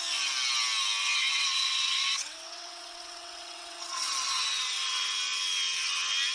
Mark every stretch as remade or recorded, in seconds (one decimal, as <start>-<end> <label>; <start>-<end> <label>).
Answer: 0.0-1.0 recorded; 1.0-4.1 remade; 4.1-6.3 recorded